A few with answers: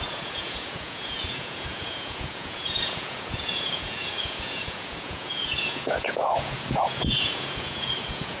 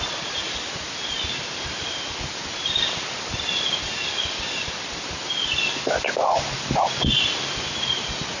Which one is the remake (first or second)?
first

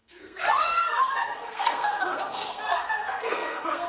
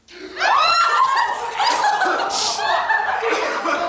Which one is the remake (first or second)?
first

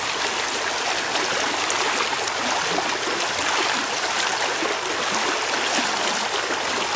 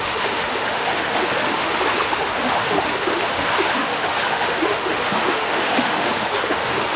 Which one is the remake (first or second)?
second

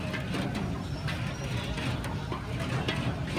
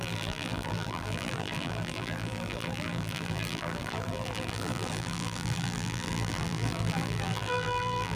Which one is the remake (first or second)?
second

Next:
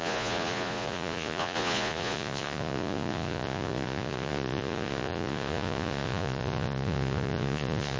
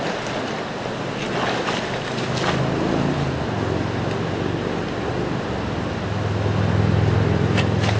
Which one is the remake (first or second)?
first